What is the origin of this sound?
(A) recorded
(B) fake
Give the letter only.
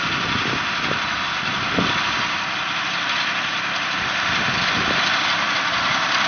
A